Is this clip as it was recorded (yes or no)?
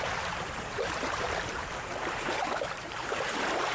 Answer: no